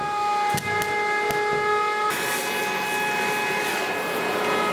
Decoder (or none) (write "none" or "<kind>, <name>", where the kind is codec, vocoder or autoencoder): none